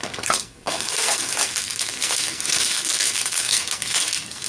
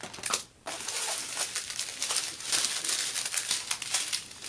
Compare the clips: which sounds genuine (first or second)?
second